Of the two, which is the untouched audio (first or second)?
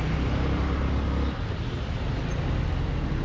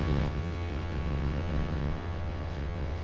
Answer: first